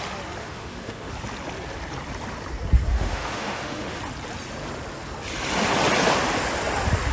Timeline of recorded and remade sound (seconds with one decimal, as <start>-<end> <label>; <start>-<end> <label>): 0.0-0.4 recorded; 0.4-1.1 remade; 1.1-2.9 recorded; 2.9-4.0 remade; 4.0-7.1 recorded

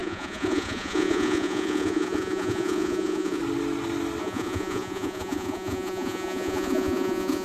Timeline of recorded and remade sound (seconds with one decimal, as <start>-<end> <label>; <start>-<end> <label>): 0.0-3.4 remade; 3.4-4.2 recorded; 4.2-7.4 remade

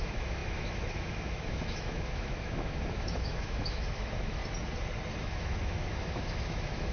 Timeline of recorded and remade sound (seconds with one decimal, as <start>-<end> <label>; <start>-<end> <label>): 0.0-4.4 remade; 4.4-5.2 recorded; 5.2-6.9 remade

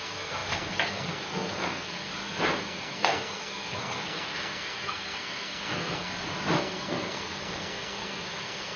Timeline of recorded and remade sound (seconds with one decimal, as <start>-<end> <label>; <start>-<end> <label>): 0.0-2.1 remade; 2.1-2.6 recorded; 2.6-6.1 remade; 6.1-6.6 recorded; 6.6-8.8 remade

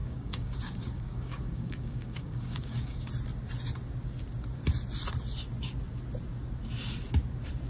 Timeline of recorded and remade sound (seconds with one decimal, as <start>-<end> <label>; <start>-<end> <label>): 0.0-3.1 remade; 3.1-7.7 recorded

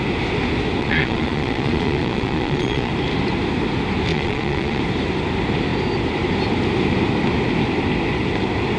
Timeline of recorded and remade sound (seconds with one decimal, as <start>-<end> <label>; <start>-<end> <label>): 0.0-0.8 recorded; 0.8-2.9 remade; 2.9-4.1 recorded; 4.1-4.8 remade; 4.8-8.8 recorded

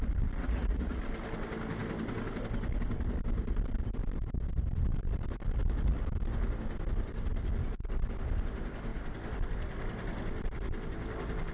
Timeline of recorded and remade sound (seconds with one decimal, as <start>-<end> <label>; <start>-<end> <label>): 0.0-0.4 recorded; 0.4-1.0 remade; 1.0-11.5 recorded

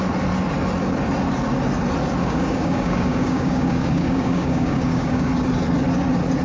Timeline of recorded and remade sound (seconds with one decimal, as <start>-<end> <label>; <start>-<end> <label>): 0.0-2.2 recorded; 2.2-5.3 remade; 5.3-6.4 recorded